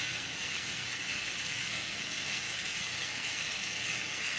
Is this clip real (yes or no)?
no